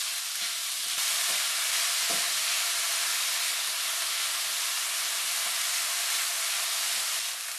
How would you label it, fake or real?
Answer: real